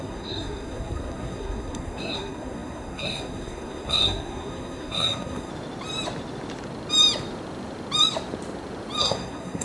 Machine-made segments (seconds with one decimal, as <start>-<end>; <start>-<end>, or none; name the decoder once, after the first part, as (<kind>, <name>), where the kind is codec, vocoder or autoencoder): 0.0-5.5 (codec, SNAC); 9.0-9.6